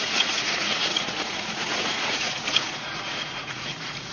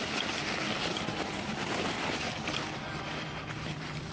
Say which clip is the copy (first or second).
first